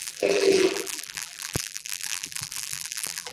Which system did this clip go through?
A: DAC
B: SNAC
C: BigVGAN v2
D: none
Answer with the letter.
C